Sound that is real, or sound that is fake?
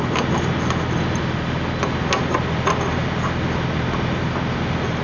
real